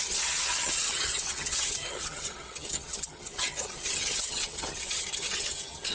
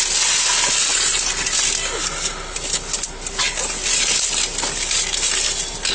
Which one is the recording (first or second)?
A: second